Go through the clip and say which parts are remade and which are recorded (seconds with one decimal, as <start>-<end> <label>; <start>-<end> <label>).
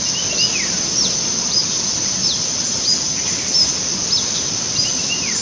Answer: 0.0-5.4 recorded